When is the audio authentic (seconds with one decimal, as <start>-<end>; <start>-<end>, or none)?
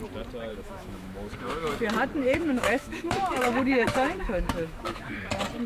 0.0-0.5; 1.7-2.2; 5.1-5.7